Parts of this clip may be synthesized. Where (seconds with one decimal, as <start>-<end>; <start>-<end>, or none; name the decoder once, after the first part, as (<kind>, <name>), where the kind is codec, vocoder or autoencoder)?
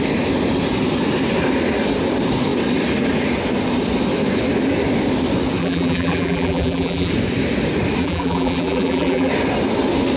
5.6-7.1 (vocoder, BigVGAN v2); 8.0-9.3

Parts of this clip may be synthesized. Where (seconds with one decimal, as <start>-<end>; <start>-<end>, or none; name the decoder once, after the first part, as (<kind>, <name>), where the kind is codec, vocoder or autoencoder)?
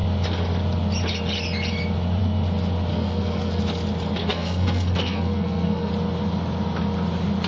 2.9-3.6 (codec, SNAC); 4.2-5.9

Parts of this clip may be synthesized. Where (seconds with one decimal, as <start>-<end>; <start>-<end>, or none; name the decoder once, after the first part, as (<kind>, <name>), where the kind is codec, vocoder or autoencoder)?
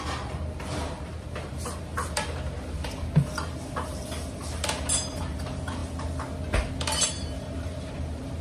0.0-1.9 (vocoder, BigVGAN v2); 4.3-5.8; 7.0-8.4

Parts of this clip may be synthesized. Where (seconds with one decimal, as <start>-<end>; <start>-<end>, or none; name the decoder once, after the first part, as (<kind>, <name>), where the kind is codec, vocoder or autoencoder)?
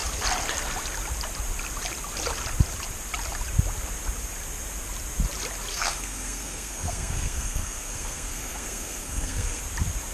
5.7-9.6 (codec, SNAC)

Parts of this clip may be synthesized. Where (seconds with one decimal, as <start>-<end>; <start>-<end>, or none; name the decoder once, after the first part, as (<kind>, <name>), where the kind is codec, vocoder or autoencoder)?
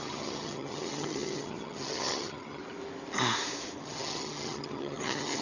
0.0-2.6 (vocoder, HiFi-GAN); 3.8-5.4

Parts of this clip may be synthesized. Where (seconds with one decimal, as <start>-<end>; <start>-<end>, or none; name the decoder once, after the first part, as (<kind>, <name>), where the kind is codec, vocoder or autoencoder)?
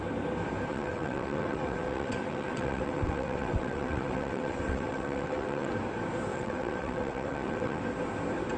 0.7-5.7 (vocoder, WaveNeXt); 6.3-7.8